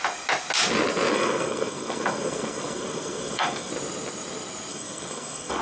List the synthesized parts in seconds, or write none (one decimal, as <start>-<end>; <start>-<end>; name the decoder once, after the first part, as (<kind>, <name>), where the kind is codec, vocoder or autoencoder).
1.1-3.7 (codec, SNAC); 4.7-5.6